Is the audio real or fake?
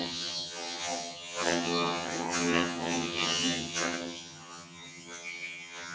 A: fake